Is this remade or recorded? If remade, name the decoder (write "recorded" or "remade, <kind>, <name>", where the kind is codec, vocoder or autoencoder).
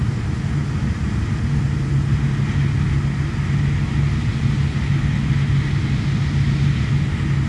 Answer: recorded